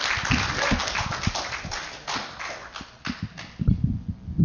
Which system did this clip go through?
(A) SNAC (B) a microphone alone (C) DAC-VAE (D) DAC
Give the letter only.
B